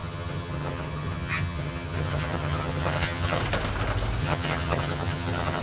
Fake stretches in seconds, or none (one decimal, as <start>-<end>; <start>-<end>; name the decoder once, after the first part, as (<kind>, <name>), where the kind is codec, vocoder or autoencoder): 0.0-3.4 (vocoder, HiFi-GAN); 4.2-5.6